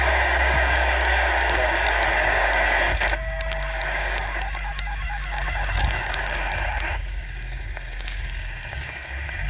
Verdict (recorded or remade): remade